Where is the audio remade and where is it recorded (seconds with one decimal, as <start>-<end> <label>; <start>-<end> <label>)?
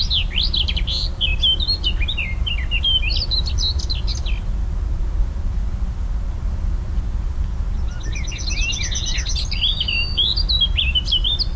0.0-11.6 recorded